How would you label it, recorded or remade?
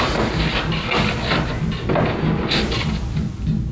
recorded